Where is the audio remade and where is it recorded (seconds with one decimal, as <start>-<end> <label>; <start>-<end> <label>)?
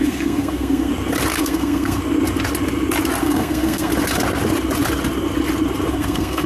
0.0-0.9 remade; 0.9-1.4 recorded; 1.4-2.0 remade; 2.0-3.2 recorded; 3.2-3.9 remade; 3.9-5.9 recorded; 5.9-6.5 remade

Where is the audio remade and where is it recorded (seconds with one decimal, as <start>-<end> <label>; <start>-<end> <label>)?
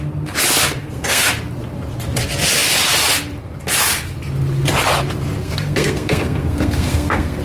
0.0-0.8 recorded; 0.8-1.3 remade; 1.3-5.4 recorded; 5.4-7.4 remade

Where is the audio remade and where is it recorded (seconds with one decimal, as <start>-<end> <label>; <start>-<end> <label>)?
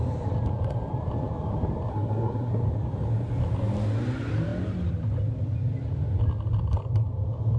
0.0-1.9 recorded; 1.9-2.5 remade; 2.5-7.6 recorded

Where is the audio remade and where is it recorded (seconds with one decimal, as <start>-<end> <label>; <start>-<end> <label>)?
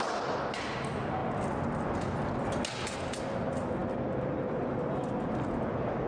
0.0-6.1 recorded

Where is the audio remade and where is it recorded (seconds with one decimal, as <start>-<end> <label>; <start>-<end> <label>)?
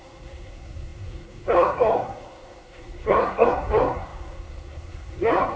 0.0-5.6 remade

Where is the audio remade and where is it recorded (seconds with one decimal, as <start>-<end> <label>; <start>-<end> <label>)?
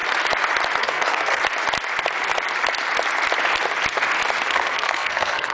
0.0-0.8 recorded; 0.8-1.4 remade; 1.4-4.5 recorded; 4.5-5.5 remade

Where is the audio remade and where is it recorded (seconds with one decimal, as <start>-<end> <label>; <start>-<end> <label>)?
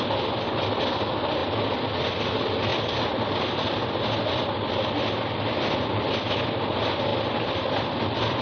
0.0-8.4 recorded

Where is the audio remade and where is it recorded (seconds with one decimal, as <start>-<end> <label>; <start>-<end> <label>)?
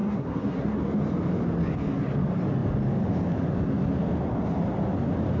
0.0-0.8 remade; 0.8-5.4 recorded